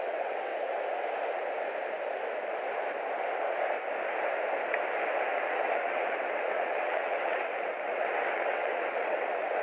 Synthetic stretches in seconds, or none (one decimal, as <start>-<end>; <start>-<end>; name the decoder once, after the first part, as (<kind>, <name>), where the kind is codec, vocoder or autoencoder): 0.0-0.5 (vocoder, WaveNeXt); 5.3-9.6